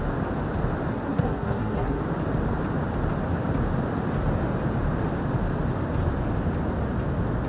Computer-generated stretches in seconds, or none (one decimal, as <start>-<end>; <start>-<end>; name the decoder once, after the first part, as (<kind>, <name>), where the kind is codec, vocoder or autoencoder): 0.9-2.0 (codec, SNAC)